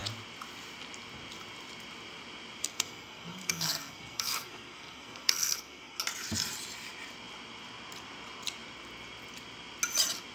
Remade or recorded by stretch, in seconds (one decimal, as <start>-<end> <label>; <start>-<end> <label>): 0.0-2.6 recorded; 2.6-6.0 remade; 6.0-10.3 recorded

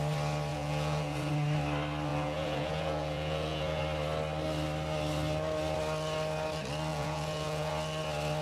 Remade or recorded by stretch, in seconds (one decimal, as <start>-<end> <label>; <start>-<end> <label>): 0.0-0.5 recorded; 0.5-1.3 remade; 1.3-2.1 recorded; 2.1-3.8 remade; 3.8-6.9 recorded; 6.9-7.7 remade; 7.7-8.4 recorded

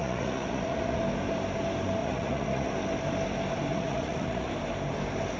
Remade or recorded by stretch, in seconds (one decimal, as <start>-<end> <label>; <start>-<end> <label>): 0.0-1.0 remade; 1.0-2.0 recorded; 2.0-2.7 remade; 2.7-3.7 recorded; 3.7-4.5 remade; 4.5-5.4 recorded